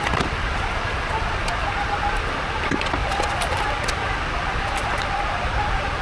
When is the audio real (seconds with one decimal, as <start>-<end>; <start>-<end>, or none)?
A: 0.0-6.0